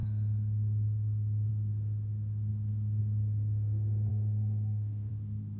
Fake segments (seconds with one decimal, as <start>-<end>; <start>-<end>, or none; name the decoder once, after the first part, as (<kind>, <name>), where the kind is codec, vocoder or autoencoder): 4.1-5.1 (codec, SNAC)